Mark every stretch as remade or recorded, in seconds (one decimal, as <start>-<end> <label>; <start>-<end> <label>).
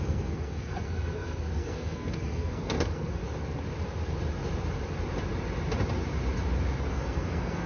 0.0-3.2 remade; 3.2-6.9 recorded; 6.9-7.7 remade